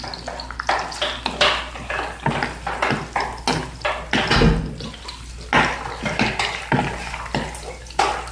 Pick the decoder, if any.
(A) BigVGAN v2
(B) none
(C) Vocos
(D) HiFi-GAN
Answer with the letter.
B